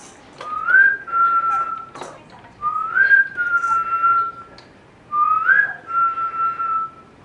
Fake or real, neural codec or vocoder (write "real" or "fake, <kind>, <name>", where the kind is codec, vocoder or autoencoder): real